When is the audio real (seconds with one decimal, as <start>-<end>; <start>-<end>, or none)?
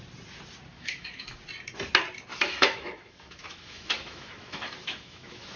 0.0-0.7; 1.4-2.3